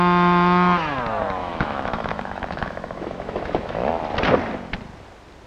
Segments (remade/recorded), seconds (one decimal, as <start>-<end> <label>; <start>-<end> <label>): 0.0-1.4 recorded; 1.4-4.0 remade; 4.0-5.5 recorded